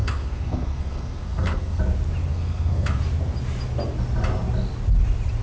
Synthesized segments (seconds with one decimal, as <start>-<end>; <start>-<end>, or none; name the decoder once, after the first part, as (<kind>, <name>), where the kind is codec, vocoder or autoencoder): 0.0-1.8 (codec, SNAC); 2.3-3.0

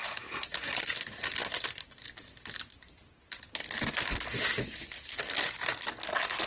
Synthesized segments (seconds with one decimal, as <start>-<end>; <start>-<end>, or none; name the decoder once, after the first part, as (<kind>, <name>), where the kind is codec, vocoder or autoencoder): none

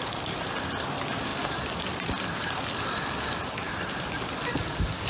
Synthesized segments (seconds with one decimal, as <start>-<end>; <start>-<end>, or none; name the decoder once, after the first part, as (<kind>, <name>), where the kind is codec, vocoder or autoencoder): none

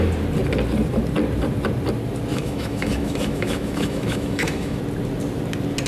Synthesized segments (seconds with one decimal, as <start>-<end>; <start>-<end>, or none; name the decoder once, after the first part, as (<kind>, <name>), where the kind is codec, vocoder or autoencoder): 2.3-4.8 (autoencoder, DAC-VAE)